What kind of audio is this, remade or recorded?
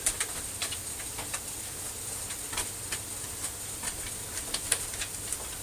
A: recorded